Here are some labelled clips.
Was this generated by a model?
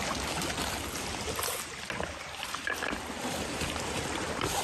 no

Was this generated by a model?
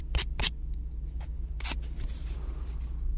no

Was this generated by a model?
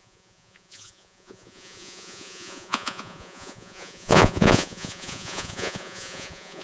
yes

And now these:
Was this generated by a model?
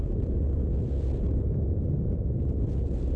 no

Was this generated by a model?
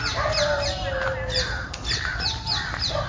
no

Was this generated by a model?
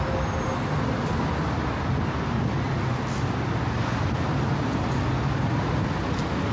no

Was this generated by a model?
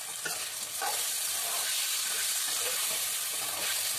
no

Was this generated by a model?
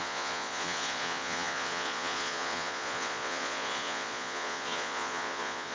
yes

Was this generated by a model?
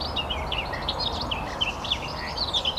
no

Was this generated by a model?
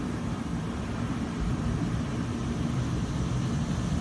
yes